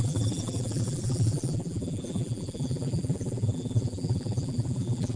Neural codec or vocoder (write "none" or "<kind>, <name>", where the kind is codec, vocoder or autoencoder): vocoder, BigVGAN v2